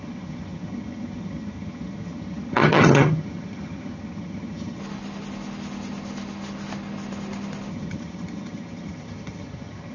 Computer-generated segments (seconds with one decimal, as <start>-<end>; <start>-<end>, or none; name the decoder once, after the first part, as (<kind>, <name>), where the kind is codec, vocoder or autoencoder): 0.0-4.8 (vocoder, HiFi-GAN); 7.7-9.9